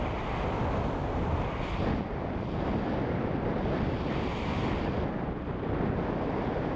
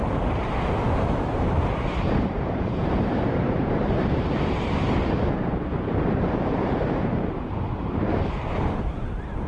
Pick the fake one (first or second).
second